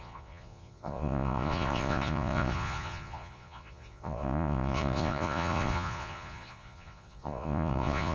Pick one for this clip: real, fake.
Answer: fake